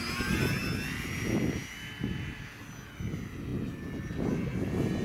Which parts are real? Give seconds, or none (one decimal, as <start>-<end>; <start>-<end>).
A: 0.0-5.0